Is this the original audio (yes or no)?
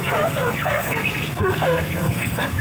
no